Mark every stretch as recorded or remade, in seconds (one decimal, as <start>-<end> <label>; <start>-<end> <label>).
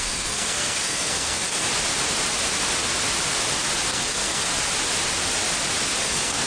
0.0-1.7 remade; 1.7-3.9 recorded; 3.9-4.5 remade; 4.5-6.0 recorded; 6.0-6.5 remade